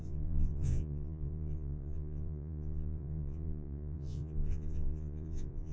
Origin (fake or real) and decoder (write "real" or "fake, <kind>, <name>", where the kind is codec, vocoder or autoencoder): fake, vocoder, Vocos